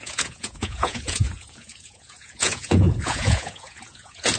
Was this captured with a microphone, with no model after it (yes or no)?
no